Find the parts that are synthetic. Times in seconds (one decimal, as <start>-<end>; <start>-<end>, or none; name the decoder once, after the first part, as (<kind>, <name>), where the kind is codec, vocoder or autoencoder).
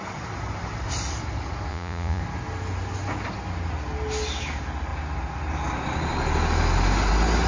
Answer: 1.7-2.2 (vocoder, Vocos)